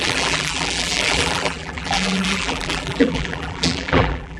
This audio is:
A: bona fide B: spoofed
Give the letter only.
B